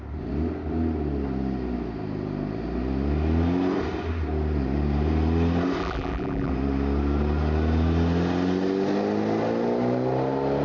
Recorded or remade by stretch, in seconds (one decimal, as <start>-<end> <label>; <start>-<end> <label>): 0.0-5.8 recorded; 5.8-6.5 remade; 6.5-10.6 recorded